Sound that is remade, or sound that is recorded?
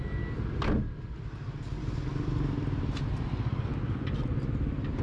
recorded